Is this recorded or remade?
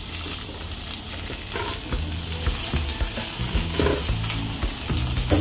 recorded